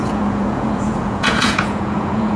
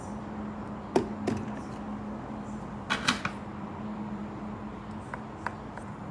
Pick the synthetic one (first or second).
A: first